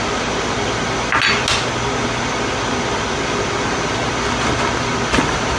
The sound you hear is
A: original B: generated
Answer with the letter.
A